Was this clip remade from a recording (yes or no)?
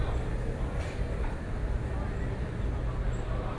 no